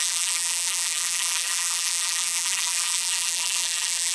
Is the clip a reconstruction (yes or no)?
yes